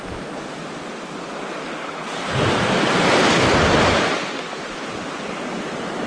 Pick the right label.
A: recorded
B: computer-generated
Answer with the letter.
A